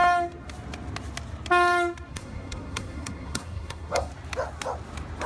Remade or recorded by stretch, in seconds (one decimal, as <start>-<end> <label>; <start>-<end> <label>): 0.0-2.1 recorded; 2.1-4.1 remade; 4.1-5.3 recorded